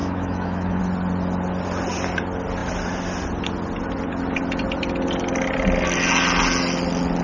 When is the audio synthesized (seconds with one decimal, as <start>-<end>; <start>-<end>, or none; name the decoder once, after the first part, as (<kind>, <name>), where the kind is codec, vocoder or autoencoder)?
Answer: 0.0-0.8 (autoencoder, DAC-VAE)